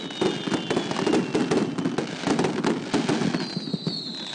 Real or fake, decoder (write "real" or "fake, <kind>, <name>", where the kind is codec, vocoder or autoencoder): real